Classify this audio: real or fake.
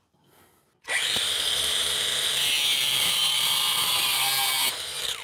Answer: real